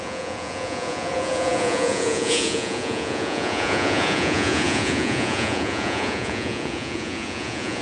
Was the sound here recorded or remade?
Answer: remade